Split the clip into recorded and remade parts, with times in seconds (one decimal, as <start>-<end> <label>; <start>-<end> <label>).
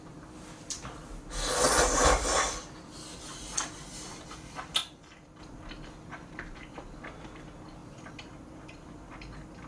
0.0-9.7 recorded